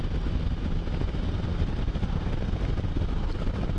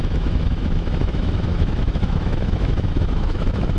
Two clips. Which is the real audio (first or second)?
first